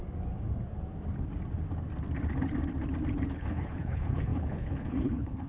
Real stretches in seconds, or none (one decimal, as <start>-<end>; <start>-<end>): 0.0-3.3